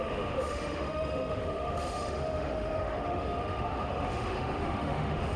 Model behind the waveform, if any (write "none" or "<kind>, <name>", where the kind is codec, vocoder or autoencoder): autoencoder, DAC-VAE